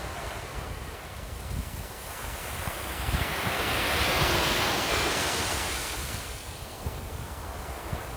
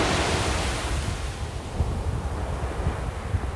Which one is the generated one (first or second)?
first